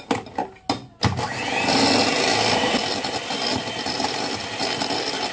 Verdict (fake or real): real